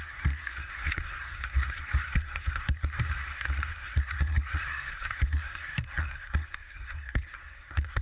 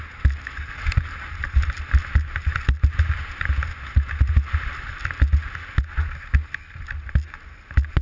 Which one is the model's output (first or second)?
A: first